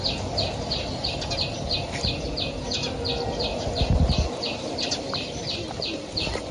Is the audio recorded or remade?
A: recorded